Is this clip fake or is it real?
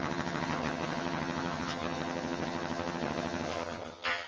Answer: fake